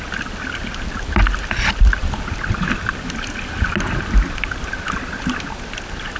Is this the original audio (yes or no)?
yes